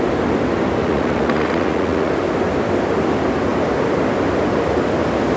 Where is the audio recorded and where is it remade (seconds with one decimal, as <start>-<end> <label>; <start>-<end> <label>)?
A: 0.0-0.8 recorded; 0.8-2.1 remade; 2.1-5.4 recorded